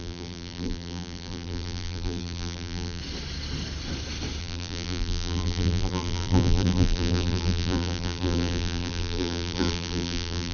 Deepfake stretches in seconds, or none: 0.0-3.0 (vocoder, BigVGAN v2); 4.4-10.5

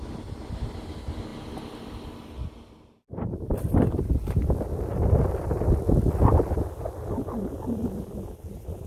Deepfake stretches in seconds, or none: none

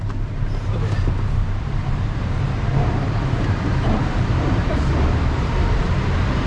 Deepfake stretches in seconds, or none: 0.0-4.7 (vocoder, BigVGAN v2); 5.4-6.5

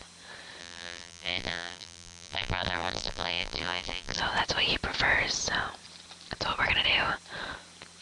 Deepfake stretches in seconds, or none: 0.6-4.2 (vocoder, BigVGAN v2)

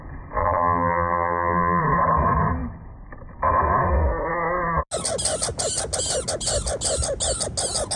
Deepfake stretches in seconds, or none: 0.4-1.8 (vocoder, BigVGAN v2)

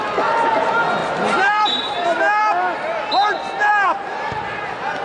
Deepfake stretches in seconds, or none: 1.0-1.8 (vocoder, BigVGAN v2)

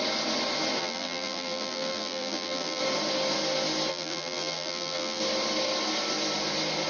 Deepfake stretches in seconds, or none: 0.8-2.8 (vocoder, BigVGAN v2); 3.9-5.2